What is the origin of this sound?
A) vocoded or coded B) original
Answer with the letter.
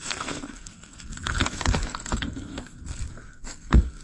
A